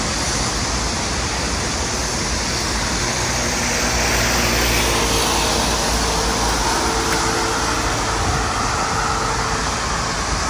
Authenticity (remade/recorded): recorded